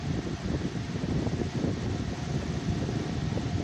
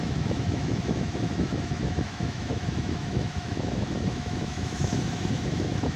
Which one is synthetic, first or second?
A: second